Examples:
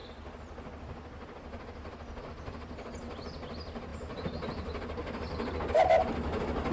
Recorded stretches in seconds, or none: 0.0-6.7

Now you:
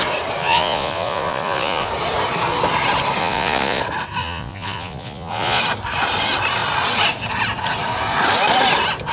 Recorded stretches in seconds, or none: 0.0-0.4; 1.9-3.2; 3.8-4.2; 5.6-9.1

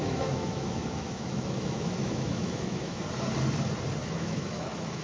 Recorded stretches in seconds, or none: 3.0-4.0

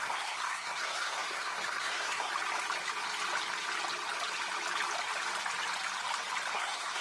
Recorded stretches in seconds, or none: 2.3-6.5

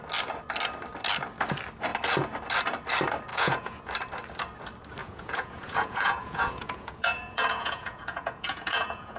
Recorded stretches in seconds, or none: 0.0-3.3; 3.9-5.0

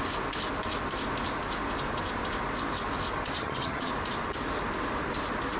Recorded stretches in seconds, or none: 0.0-3.4; 3.9-5.6

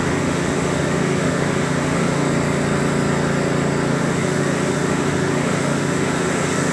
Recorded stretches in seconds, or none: 2.2-3.9

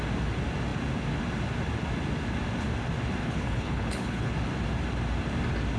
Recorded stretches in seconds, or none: 0.0-3.2; 4.3-5.8